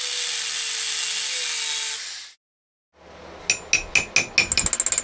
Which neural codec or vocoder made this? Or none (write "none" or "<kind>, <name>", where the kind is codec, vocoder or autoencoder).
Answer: none